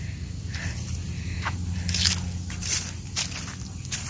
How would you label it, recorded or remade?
recorded